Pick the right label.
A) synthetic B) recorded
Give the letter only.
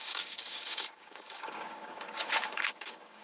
A